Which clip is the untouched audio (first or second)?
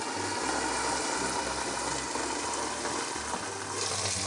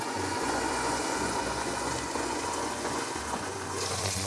first